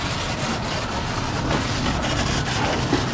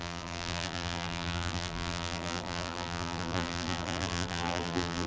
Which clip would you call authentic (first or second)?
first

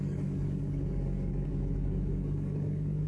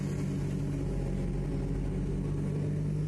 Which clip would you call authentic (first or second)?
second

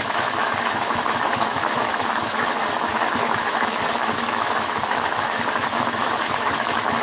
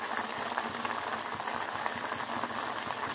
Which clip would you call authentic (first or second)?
second